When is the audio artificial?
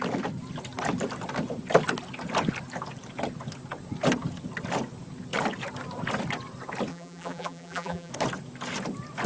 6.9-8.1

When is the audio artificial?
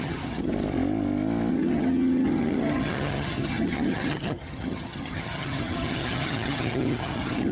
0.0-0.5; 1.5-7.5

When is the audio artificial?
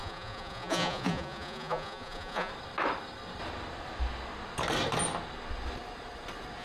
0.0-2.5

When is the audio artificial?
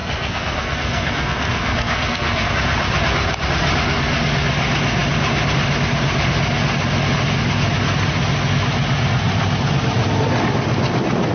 0.0-2.5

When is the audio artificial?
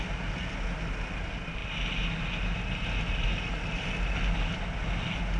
none